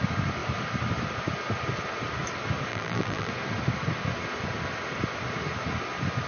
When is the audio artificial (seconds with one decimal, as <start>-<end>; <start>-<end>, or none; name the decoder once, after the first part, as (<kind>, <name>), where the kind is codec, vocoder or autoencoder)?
2.7-3.3 (vocoder, BigVGAN v2)